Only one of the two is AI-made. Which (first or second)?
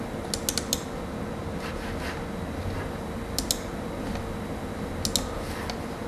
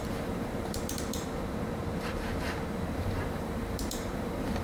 second